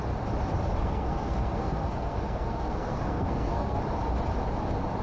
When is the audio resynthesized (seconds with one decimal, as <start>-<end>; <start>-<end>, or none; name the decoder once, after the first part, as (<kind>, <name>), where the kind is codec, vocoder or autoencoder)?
0.8-3.8 (codec, SNAC)